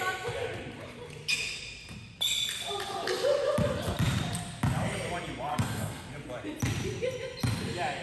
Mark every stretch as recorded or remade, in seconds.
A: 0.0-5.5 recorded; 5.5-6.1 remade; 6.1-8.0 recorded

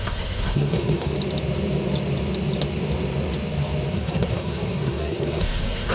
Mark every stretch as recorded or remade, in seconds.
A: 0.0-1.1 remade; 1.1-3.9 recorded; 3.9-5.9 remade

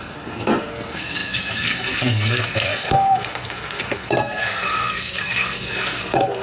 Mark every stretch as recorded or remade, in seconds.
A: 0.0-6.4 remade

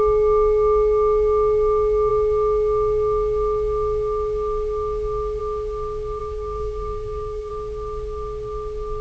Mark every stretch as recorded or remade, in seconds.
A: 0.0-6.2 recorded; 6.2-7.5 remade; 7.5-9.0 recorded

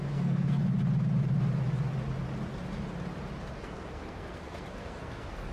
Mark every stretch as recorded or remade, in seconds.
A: 0.0-0.6 remade; 0.6-3.5 recorded; 3.5-5.5 remade

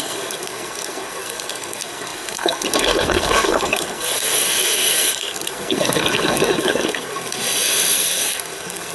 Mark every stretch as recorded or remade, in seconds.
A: 0.0-8.9 remade

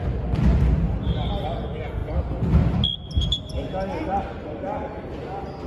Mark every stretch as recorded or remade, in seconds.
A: 0.0-5.7 recorded

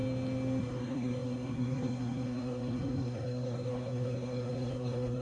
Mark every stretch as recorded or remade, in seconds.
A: 0.0-0.6 recorded; 0.6-5.2 remade